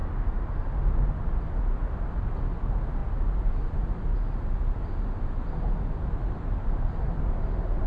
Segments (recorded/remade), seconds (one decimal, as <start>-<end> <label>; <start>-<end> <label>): 0.0-7.9 recorded